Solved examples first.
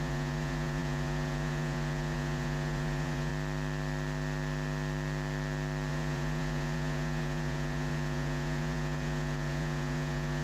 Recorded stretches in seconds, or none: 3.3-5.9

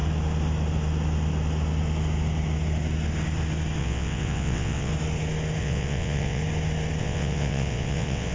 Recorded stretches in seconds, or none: 0.0-3.8; 4.9-5.6; 6.4-7.0

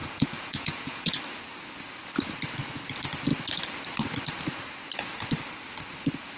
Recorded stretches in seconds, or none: 1.2-6.4